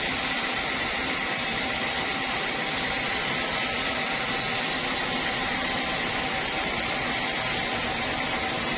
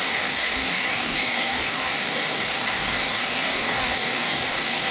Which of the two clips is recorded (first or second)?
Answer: first